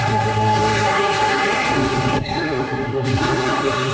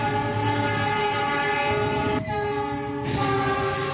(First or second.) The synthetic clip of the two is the first